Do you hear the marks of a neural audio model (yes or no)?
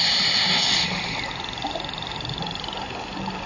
no